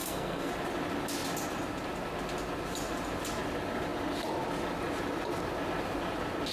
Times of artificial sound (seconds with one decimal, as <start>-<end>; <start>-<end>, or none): 0.0-0.5